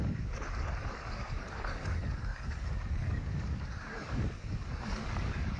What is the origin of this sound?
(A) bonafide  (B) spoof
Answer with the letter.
B